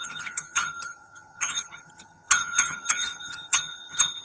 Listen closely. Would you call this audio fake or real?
fake